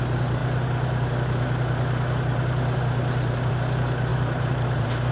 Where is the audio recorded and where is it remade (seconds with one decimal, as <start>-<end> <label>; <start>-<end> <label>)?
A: 0.0-4.1 recorded; 4.1-5.1 remade